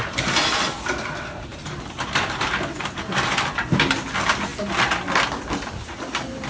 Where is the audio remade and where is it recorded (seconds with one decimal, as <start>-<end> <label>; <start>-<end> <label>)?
0.0-1.5 recorded; 1.5-3.5 remade; 3.5-6.5 recorded

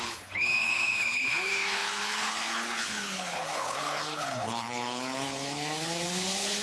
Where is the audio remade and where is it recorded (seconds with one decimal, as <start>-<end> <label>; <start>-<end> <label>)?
0.0-6.6 remade

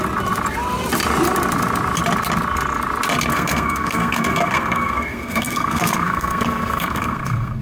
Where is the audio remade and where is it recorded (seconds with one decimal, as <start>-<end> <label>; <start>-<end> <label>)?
0.0-3.3 recorded; 3.3-7.6 remade

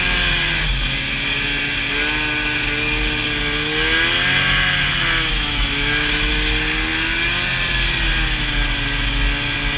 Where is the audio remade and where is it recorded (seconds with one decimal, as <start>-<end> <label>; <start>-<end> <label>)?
0.0-5.3 recorded; 5.3-6.3 remade; 6.3-9.8 recorded

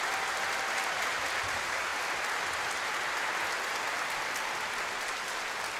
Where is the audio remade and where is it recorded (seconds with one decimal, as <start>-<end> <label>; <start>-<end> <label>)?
0.0-5.8 recorded

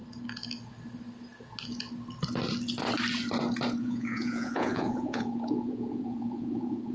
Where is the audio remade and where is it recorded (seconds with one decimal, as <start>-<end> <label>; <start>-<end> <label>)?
0.0-3.8 recorded; 3.8-6.9 remade